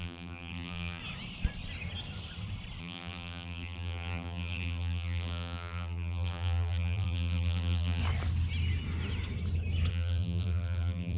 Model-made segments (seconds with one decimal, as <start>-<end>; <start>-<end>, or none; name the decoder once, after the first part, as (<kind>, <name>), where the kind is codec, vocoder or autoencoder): 0.0-1.0 (vocoder, BigVGAN v2); 2.8-8.0; 9.9-11.2